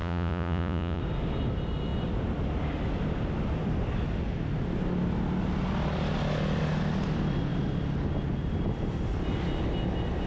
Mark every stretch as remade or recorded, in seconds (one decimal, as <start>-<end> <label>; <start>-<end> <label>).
0.0-1.0 remade; 1.0-10.3 recorded

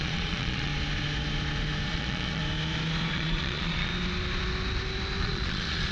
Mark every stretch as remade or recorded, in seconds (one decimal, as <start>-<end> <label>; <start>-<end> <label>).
0.0-0.7 remade; 0.7-1.9 recorded; 1.9-2.4 remade; 2.4-3.1 recorded; 3.1-3.9 remade; 3.9-5.2 recorded; 5.2-5.9 remade

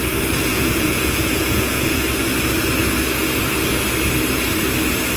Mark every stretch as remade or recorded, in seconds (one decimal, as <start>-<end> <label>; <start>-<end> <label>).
0.0-0.5 recorded; 0.5-2.0 remade; 2.0-5.2 recorded

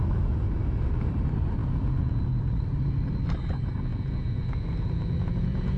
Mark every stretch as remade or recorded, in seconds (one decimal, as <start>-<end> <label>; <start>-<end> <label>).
0.0-1.6 recorded; 1.6-2.5 remade; 2.5-3.9 recorded; 3.9-5.8 remade

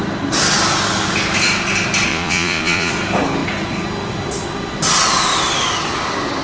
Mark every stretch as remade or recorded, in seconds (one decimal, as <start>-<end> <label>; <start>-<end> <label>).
0.0-2.1 recorded; 2.1-2.9 remade; 2.9-6.4 recorded

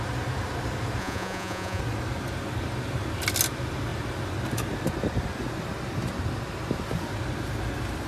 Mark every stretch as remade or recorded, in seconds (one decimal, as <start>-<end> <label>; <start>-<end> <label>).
0.0-1.0 recorded; 1.0-1.8 remade; 1.8-8.1 recorded

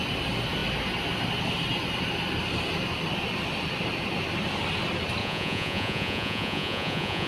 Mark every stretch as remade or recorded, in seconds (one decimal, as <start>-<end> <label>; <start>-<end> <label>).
0.0-5.2 recorded; 5.2-7.3 remade

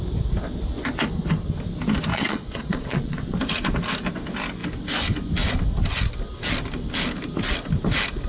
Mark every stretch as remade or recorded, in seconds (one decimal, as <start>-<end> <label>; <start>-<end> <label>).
0.0-2.1 recorded; 2.1-3.2 remade; 3.2-8.3 recorded